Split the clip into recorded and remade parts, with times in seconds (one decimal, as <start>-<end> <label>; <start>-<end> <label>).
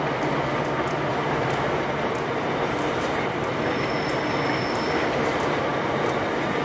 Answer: 0.0-6.6 recorded